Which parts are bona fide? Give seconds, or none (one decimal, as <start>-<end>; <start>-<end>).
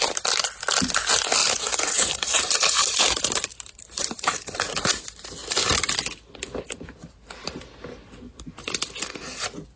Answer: 0.0-1.4; 4.3-9.8